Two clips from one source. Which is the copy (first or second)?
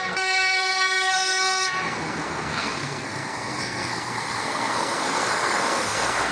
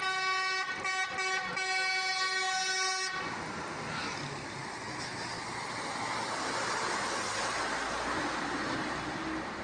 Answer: first